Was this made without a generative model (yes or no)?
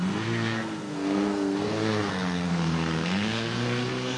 no